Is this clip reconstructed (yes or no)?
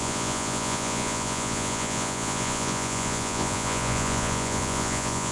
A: yes